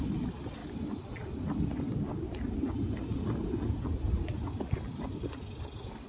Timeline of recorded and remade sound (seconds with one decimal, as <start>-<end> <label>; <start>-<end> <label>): 0.0-6.1 recorded